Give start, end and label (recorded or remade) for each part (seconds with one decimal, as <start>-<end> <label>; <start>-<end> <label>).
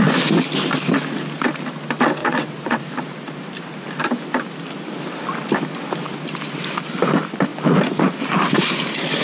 0.0-2.2 recorded; 2.2-2.8 remade; 2.8-9.2 recorded